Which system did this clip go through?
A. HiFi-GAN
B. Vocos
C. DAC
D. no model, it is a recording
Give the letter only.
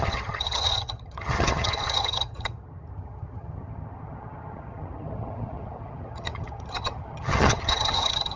A